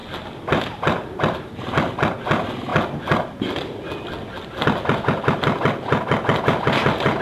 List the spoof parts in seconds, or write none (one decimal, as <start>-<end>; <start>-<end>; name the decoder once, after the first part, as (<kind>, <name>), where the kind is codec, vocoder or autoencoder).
none